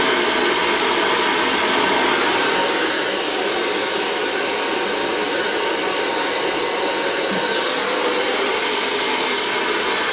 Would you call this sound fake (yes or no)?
no